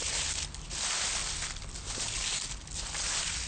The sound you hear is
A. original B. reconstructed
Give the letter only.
A